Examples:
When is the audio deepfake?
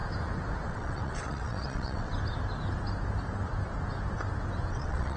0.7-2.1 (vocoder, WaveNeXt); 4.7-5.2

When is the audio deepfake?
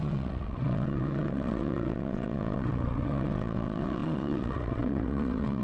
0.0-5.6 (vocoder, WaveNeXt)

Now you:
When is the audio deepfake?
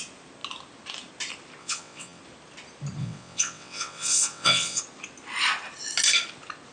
1.6-2.2 (vocoder, WaveNeXt); 3.0-4.8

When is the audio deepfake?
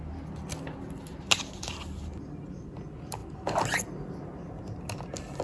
none